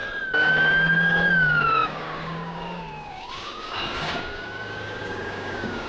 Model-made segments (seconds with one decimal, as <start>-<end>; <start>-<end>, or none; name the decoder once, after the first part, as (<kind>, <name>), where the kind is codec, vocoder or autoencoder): 0.5-5.9 (codec, DAC)